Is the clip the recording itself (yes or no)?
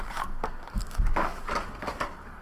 no